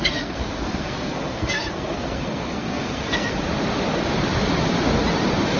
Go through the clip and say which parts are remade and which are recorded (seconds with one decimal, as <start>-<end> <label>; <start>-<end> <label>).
0.0-3.4 remade; 3.4-5.6 recorded